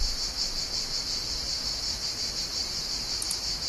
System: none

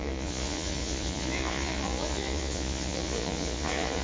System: vocoder, Vocos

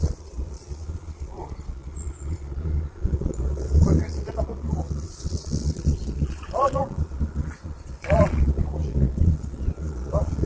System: vocoder, Vocos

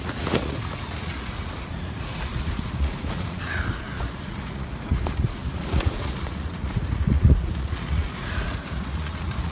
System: vocoder, Vocos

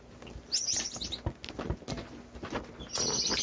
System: none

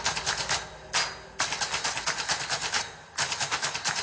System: none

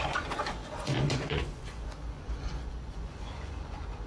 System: vocoder, Vocos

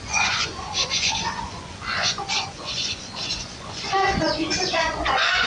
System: vocoder, Vocos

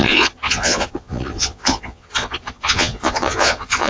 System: vocoder, Vocos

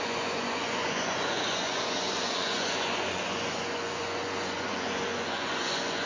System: vocoder, Vocos